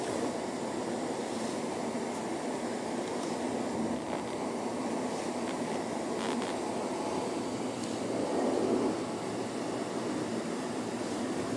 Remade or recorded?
recorded